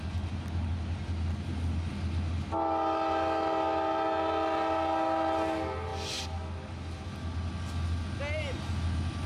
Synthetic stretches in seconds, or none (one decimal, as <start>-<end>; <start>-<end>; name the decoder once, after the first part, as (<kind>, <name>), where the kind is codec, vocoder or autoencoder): none